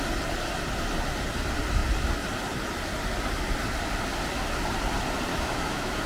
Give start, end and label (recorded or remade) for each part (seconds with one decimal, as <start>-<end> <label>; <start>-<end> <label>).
0.0-5.3 recorded; 5.3-6.1 remade